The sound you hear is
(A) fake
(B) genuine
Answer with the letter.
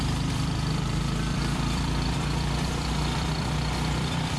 A